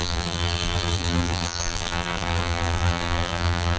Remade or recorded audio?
remade